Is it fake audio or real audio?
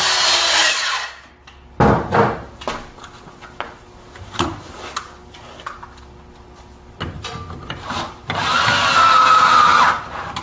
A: real